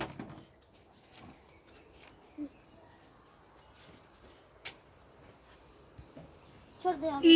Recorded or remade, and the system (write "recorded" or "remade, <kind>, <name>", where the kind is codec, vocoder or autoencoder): recorded